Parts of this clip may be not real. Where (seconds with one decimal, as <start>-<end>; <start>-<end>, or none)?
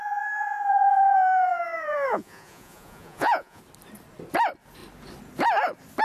0.0-3.6